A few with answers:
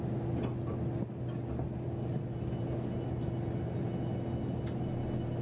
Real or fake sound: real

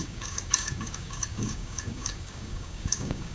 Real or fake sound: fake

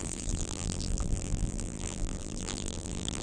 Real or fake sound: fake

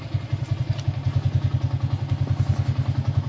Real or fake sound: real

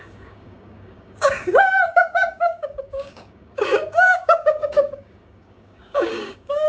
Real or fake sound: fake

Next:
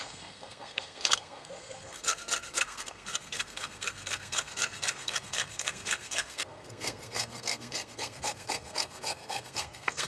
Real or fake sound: fake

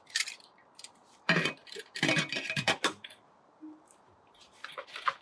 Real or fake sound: fake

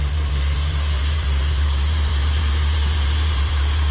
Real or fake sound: fake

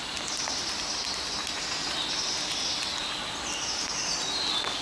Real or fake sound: real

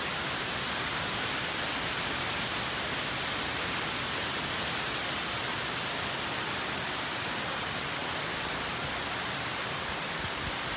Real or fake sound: real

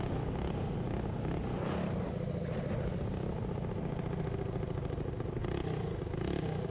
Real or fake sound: real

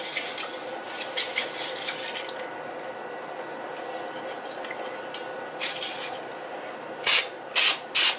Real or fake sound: real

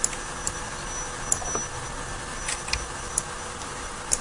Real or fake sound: real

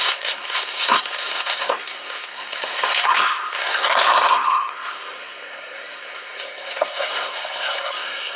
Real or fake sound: fake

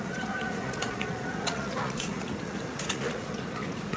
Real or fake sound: fake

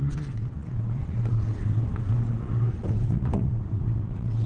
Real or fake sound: fake